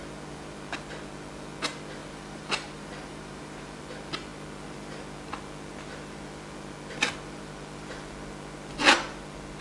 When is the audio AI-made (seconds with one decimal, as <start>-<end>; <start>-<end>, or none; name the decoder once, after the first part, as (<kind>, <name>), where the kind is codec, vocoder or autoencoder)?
2.0-3.8 (vocoder, BigVGAN v2)